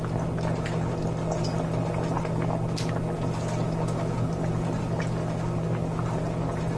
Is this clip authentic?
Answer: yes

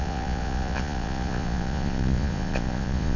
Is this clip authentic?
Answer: no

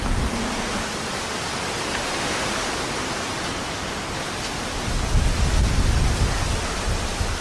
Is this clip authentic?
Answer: yes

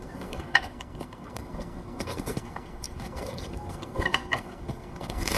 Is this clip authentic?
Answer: no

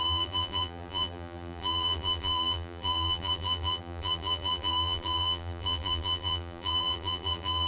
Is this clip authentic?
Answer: no